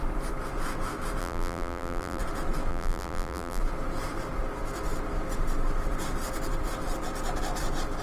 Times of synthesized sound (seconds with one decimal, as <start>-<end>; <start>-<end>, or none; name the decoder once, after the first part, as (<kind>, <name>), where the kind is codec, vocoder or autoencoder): 1.2-2.2 (vocoder, BigVGAN v2); 2.7-3.6